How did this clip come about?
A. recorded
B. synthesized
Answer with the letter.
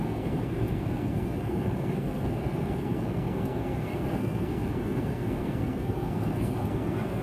B